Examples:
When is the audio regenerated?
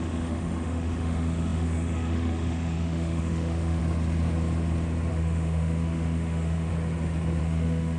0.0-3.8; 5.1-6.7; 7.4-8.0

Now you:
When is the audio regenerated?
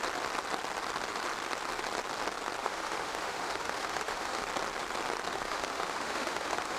2.6-4.4; 5.3-6.8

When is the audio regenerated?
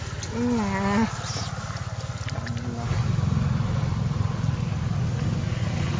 none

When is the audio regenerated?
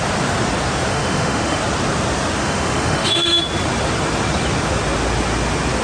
0.9-1.6; 2.4-3.4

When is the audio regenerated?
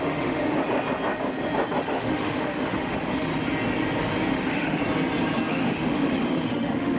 0.0-0.4; 1.8-3.3; 4.3-4.8; 5.5-7.0